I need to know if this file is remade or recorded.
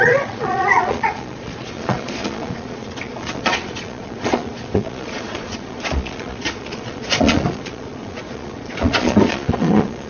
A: remade